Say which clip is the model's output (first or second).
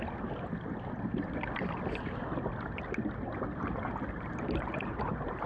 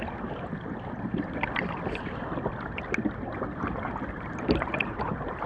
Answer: second